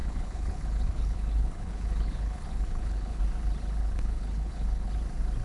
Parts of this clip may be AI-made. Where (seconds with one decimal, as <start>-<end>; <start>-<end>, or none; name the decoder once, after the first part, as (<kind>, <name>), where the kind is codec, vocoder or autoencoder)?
0.0-3.2 (codec, HILCodec); 3.8-4.9